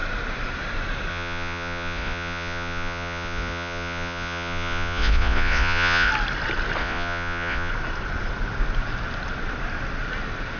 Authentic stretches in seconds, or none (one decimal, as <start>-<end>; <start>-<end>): 0.0-1.1; 6.1-6.8; 7.7-10.6